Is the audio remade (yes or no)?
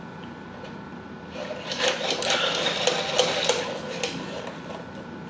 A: no